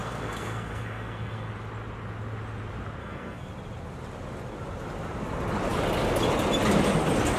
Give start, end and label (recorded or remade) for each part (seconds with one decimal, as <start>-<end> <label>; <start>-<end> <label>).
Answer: 0.0-1.5 remade; 1.5-3.0 recorded; 3.0-3.5 remade; 3.5-7.4 recorded